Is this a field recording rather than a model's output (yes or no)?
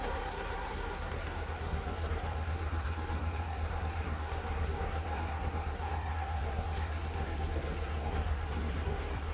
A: no